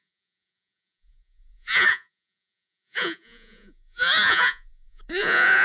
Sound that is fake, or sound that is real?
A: fake